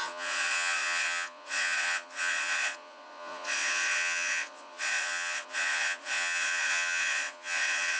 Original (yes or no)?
no